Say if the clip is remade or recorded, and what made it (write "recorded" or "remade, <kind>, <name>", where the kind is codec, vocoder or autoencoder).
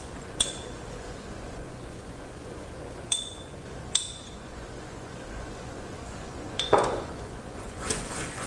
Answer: remade, vocoder, Vocos